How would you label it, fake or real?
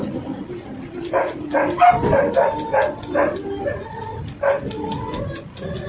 real